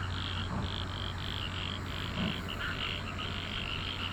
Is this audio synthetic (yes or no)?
no